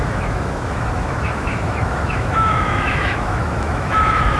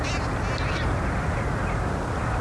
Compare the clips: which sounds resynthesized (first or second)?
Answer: first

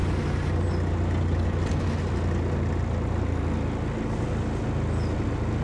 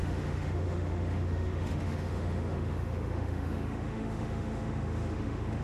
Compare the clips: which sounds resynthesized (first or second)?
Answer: second